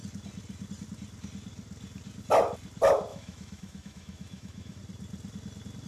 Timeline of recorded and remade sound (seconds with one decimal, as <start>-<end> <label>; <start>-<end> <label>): 0.0-3.1 recorded; 3.1-4.8 remade; 4.8-5.9 recorded